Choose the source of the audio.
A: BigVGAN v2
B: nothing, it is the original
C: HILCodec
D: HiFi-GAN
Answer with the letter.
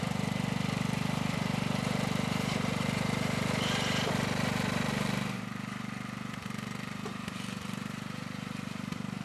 A